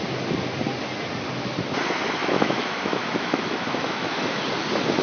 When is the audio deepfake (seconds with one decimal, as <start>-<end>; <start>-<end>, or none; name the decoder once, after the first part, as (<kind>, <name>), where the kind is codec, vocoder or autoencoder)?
2.2-4.4 (autoencoder, DAC-VAE)